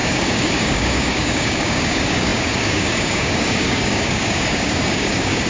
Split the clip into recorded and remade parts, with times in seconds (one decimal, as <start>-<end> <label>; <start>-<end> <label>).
0.0-5.5 remade